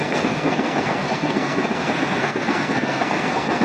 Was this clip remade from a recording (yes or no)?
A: yes